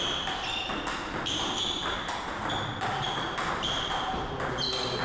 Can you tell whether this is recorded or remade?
recorded